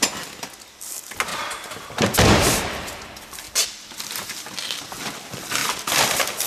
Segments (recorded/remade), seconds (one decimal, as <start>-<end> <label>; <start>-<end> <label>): 0.0-1.3 recorded; 1.3-4.1 remade; 4.1-6.5 recorded